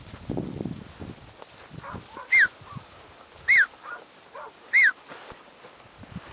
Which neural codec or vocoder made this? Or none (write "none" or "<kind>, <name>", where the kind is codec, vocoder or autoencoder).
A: none